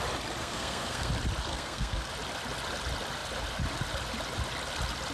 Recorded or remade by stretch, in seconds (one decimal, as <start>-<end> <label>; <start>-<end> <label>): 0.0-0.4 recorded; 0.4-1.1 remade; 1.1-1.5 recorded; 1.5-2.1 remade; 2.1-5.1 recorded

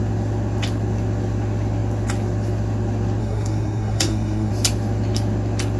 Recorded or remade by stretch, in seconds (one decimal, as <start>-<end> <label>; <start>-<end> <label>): 0.0-3.2 recorded; 3.2-4.5 remade; 4.5-5.8 recorded

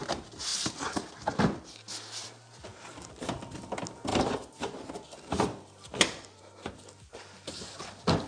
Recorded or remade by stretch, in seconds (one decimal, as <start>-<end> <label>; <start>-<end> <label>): 0.0-8.3 recorded

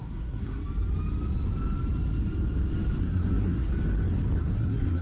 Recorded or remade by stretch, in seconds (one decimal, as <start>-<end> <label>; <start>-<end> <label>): 0.0-0.6 remade; 0.6-3.0 recorded; 3.0-3.7 remade; 3.7-4.4 recorded; 4.4-5.0 remade

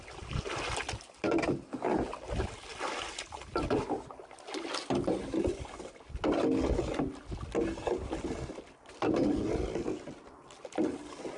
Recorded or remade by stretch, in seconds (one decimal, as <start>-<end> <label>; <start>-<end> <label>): 0.0-11.4 recorded

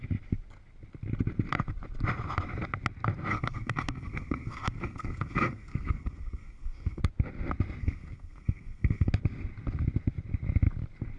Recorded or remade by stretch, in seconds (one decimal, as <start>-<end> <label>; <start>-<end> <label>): 0.0-3.3 recorded; 3.3-7.0 remade; 7.0-7.8 recorded; 7.8-9.1 remade; 9.1-11.2 recorded